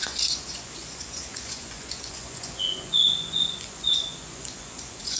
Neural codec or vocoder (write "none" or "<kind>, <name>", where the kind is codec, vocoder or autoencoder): vocoder, Vocos